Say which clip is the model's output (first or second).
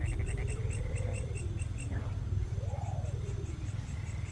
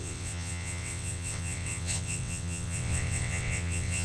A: second